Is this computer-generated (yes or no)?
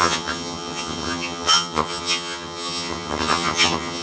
yes